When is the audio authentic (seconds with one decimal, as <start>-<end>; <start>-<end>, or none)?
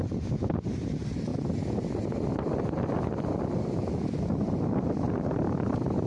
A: 1.3-5.0